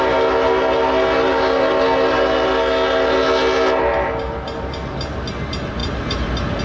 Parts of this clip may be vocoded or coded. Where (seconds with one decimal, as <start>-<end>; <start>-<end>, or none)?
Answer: 5.8-6.6